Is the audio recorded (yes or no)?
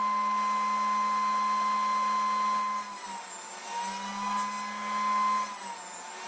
yes